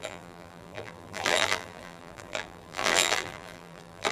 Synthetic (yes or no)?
yes